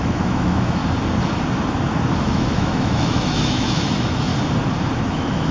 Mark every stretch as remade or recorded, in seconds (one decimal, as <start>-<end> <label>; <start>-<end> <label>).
0.0-0.8 remade; 0.8-2.2 recorded; 2.2-4.3 remade; 4.3-5.1 recorded; 5.1-5.5 remade